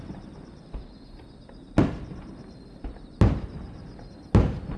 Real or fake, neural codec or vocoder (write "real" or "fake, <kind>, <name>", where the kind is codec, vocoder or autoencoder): real